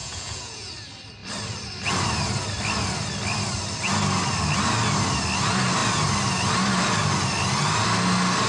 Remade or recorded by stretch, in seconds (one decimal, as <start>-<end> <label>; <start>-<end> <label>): 0.0-0.7 remade; 0.7-8.5 recorded